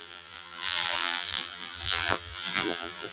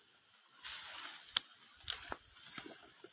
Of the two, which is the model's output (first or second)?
first